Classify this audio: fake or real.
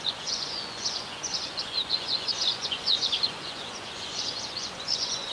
fake